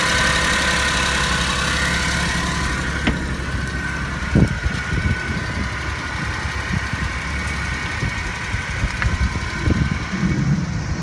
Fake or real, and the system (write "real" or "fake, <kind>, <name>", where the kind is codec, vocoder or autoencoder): real